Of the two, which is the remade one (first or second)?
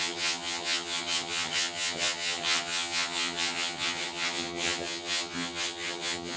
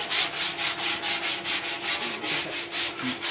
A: first